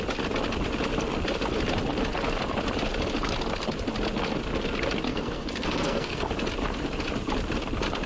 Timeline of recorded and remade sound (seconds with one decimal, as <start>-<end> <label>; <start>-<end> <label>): 0.0-5.1 recorded; 5.1-6.3 remade; 6.3-8.1 recorded